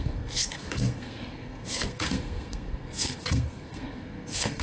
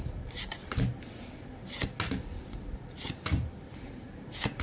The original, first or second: second